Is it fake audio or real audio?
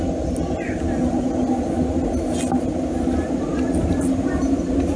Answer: real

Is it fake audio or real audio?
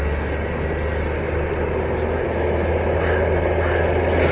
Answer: real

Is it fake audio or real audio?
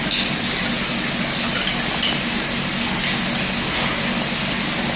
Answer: real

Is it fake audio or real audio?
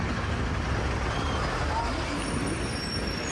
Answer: real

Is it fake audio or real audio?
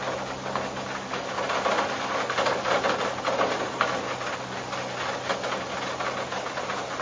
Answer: real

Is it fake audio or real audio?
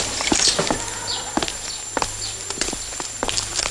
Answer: fake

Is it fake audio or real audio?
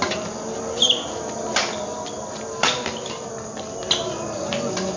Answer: real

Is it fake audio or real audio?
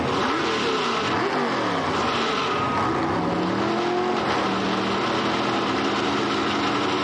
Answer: real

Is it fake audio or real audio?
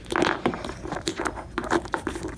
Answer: real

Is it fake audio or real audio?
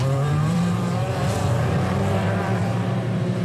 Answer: fake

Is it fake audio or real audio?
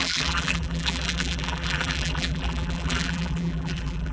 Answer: fake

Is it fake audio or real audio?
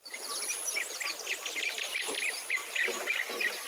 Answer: real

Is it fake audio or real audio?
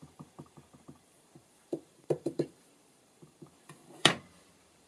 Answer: fake